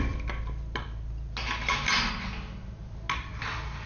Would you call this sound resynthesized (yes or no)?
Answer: no